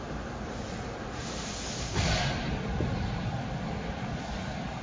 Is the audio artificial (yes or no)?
no